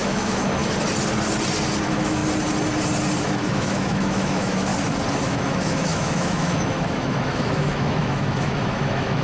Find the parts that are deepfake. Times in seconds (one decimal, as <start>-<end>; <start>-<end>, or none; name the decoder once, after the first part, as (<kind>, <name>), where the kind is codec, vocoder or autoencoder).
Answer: 0.0-0.6 (autoencoder, DAC-VAE); 1.8-2.2; 3.2-4.7; 5.2-9.2